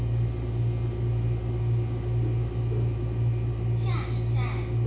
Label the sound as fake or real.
real